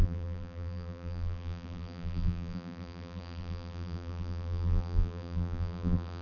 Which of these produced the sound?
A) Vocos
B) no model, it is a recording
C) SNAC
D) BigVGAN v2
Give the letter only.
D